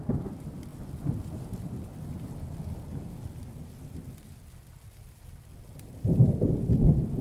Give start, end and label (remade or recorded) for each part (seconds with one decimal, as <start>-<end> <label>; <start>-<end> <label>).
0.0-7.2 recorded